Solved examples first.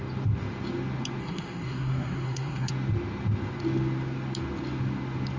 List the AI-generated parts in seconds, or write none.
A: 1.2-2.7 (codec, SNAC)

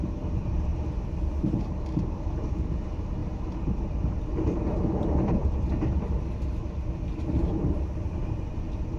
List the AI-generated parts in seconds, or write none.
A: 0.0-0.7 (vocoder, BigVGAN v2); 1.4-5.4; 7.4-9.0

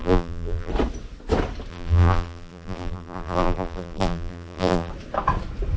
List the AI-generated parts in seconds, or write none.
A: 0.0-0.7 (vocoder, BigVGAN v2); 1.7-4.9

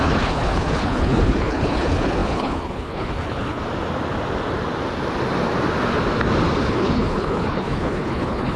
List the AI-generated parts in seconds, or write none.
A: 0.0-3.6 (codec, HILCodec); 6.6-8.6

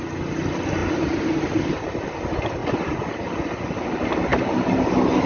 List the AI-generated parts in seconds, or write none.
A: 0.8-1.8 (vocoder, BigVGAN v2); 2.6-3.1; 4.3-4.8